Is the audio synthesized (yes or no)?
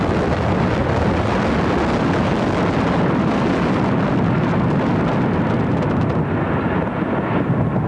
no